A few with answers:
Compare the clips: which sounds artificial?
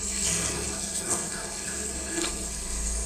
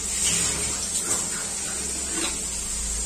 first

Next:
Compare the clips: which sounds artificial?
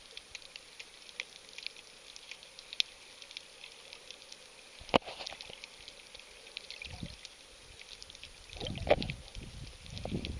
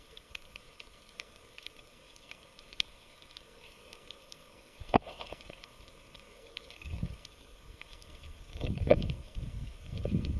second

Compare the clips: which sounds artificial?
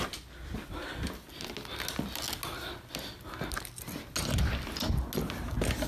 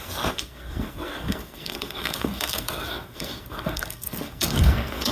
second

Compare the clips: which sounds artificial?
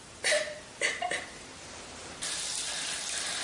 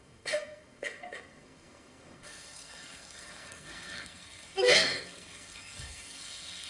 second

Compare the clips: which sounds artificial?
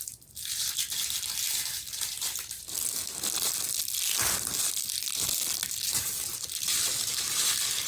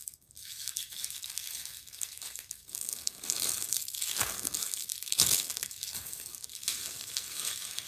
second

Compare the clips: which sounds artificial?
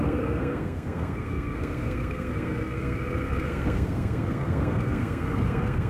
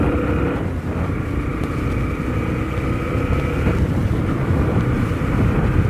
first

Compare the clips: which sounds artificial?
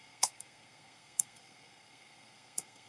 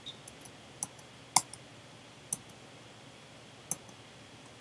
first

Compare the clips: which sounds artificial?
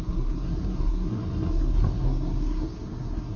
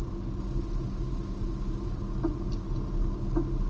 first